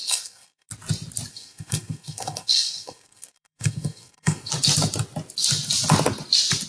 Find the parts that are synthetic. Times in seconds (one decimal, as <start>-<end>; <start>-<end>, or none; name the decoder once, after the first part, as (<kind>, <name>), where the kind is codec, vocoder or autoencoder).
0.0-0.7 (codec, SNAC); 1.3-4.5